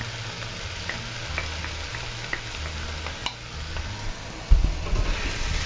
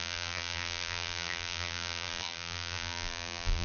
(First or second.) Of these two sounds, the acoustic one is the first